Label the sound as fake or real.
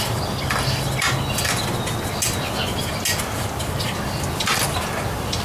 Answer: real